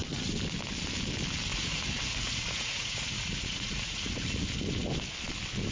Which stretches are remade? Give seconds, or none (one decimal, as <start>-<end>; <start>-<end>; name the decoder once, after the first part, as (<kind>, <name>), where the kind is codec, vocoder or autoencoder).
1.5-4.4 (vocoder, Vocos)